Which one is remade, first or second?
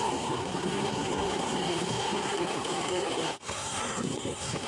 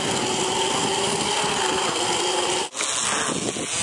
first